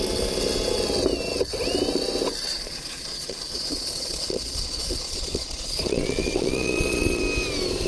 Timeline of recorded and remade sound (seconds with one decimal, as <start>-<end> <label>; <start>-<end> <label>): 0.0-2.5 recorded; 2.5-7.2 remade; 7.2-7.9 recorded